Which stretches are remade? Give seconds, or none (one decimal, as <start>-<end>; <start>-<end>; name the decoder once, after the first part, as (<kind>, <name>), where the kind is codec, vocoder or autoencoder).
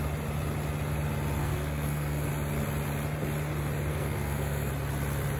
1.4-2.3 (codec, SNAC); 3.9-4.7